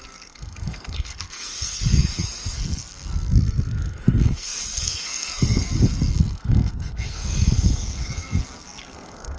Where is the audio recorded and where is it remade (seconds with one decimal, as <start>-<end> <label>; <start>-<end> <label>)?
0.0-9.4 remade